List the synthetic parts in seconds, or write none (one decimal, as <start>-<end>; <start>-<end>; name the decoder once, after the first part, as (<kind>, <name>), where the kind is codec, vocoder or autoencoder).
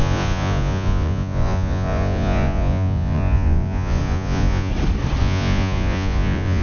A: 0.0-4.7 (vocoder, Vocos); 5.2-6.6